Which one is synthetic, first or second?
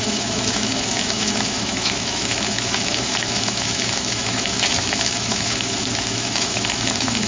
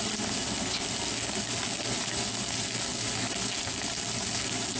first